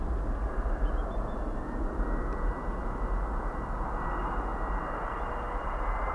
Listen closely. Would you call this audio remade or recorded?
recorded